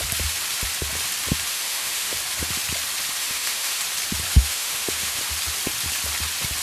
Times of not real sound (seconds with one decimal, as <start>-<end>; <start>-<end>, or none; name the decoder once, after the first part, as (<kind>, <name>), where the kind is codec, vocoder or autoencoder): 1.5-2.1 (autoencoder, DAC-VAE); 3.2-3.8; 4.3-5.2